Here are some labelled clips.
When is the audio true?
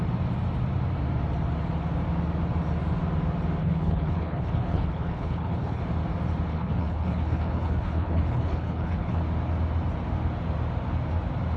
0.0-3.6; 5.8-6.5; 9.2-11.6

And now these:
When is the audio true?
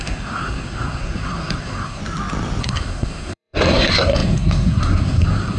2.0-2.6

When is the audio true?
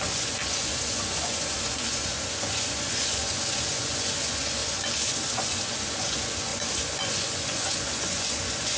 none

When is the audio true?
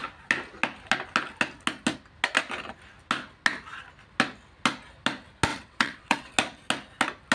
0.0-5.5; 6.3-7.3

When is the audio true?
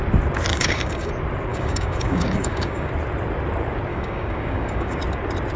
0.0-0.5; 1.1-1.5; 2.9-3.9; 5.0-5.6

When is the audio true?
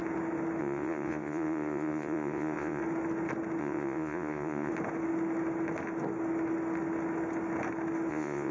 0.0-0.6; 2.8-3.6; 4.7-8.1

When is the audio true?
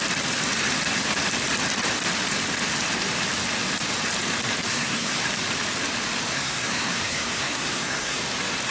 0.0-4.7; 5.2-6.3; 8.2-8.7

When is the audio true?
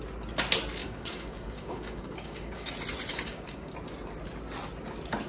0.0-0.8; 2.7-3.1; 3.7-5.3